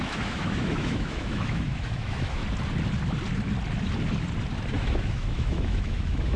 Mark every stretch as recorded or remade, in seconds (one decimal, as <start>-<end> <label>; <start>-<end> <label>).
0.0-2.4 remade; 2.4-4.7 recorded; 4.7-6.4 remade